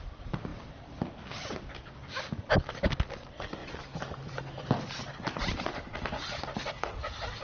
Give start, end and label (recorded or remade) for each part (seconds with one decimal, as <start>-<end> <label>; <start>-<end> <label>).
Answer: 0.0-7.4 recorded